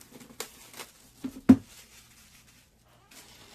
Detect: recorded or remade recorded